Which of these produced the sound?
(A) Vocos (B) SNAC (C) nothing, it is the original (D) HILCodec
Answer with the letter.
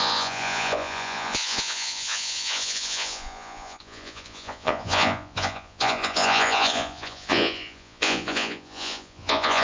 A